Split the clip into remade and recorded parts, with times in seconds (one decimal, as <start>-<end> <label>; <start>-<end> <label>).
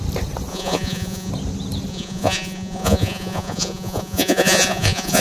0.0-0.5 recorded; 0.5-1.3 remade; 1.3-1.9 recorded; 1.9-5.2 remade